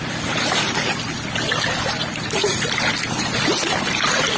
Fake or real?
real